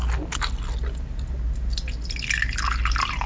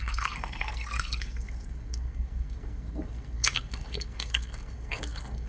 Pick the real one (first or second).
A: first